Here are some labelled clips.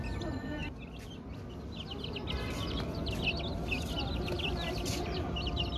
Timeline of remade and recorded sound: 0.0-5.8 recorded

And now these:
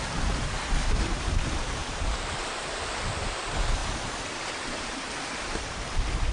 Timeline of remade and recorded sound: 0.0-1.8 recorded; 1.8-2.8 remade; 2.8-3.8 recorded; 3.8-6.3 remade

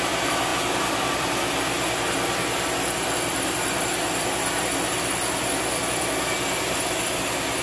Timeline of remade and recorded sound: 0.0-7.6 recorded

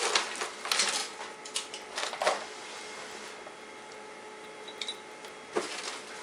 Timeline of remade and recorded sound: 0.0-6.2 recorded